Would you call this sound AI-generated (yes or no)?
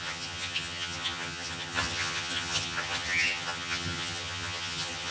yes